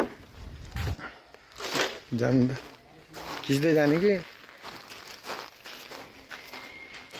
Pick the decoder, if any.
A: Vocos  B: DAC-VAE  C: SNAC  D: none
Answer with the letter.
D